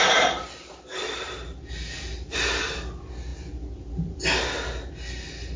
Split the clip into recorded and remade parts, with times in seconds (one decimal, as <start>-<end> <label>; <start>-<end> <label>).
0.0-5.6 recorded